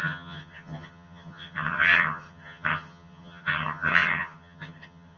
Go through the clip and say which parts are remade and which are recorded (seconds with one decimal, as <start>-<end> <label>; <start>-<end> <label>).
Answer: 0.0-5.2 remade